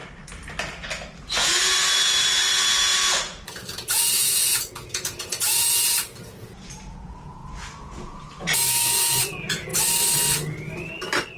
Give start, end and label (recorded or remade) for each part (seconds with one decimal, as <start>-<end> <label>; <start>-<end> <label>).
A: 0.0-1.2 recorded; 1.2-9.7 remade; 9.7-11.4 recorded